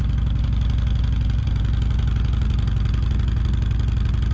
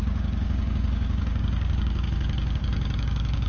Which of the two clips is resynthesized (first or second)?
second